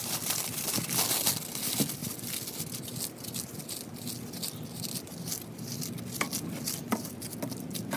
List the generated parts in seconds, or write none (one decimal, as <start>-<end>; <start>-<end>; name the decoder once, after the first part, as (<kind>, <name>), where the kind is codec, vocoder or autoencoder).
none